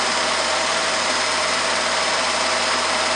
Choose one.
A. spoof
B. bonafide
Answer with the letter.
B